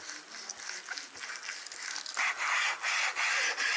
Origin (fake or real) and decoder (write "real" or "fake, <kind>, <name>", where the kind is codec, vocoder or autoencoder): real